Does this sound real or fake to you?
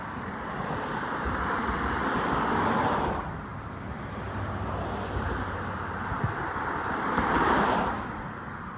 real